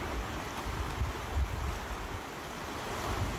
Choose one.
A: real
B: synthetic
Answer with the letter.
A